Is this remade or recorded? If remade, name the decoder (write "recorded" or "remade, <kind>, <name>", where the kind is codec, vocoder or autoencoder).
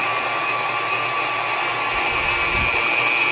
recorded